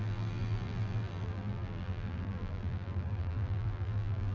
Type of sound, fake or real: fake